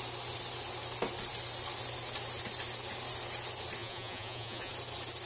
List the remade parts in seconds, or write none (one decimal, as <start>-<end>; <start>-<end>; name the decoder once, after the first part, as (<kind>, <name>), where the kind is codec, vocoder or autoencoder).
3.8-4.7 (vocoder, Vocos)